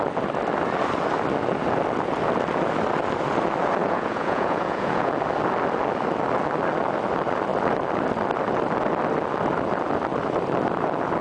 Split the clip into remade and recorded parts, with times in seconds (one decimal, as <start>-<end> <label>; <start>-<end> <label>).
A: 0.0-3.8 recorded; 3.8-5.1 remade; 5.1-11.2 recorded